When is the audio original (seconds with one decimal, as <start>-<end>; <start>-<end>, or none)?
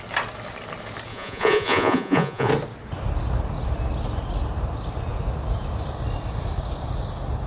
0.0-1.1; 2.5-7.5